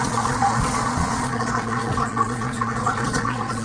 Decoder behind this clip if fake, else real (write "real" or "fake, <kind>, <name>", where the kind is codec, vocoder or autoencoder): fake, vocoder, Vocos